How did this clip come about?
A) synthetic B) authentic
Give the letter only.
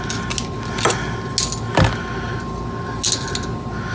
B